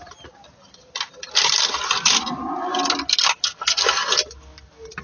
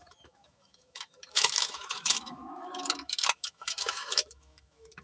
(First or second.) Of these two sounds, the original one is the first